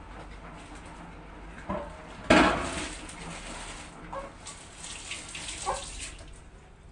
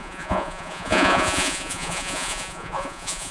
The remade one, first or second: second